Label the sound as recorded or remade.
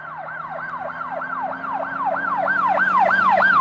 recorded